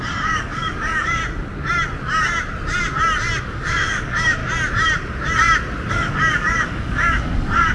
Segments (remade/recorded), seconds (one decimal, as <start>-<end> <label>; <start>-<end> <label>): 0.0-1.2 remade; 1.2-3.4 recorded; 3.4-4.4 remade; 4.4-5.9 recorded; 5.9-7.7 remade